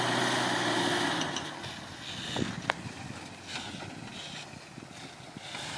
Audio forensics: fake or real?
real